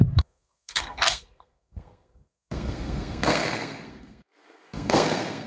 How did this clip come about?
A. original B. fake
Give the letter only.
B